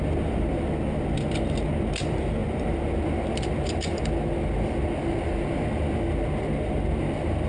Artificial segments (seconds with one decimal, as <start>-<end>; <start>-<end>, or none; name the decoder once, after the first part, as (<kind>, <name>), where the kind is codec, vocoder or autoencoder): 0.0-7.5 (vocoder, BigVGAN v2)